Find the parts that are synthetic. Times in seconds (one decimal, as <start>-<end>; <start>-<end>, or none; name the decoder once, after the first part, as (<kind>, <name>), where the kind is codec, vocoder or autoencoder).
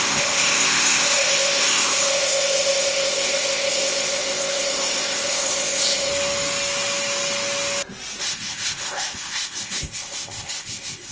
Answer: 0.0-6.1 (codec, ZipCodec); 8.2-11.1